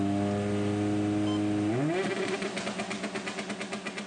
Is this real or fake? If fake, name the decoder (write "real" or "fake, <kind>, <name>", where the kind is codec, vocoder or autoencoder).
real